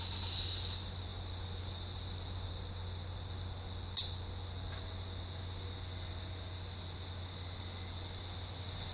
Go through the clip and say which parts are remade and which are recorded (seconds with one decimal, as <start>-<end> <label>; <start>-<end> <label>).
0.0-8.9 recorded